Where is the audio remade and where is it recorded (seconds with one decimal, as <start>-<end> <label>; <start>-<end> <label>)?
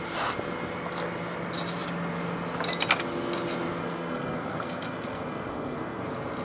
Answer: 0.0-3.8 recorded; 3.8-6.0 remade; 6.0-6.4 recorded